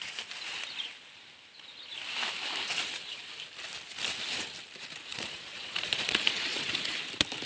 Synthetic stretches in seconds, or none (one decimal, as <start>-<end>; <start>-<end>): 5.1-6.9

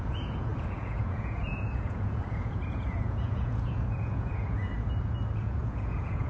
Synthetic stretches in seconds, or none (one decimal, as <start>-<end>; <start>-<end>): 0.0-4.7; 5.3-6.3